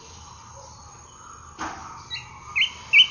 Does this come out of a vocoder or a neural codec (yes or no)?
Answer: no